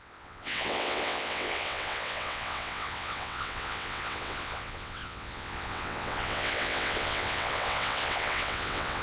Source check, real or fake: fake